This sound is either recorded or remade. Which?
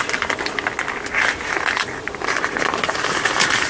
recorded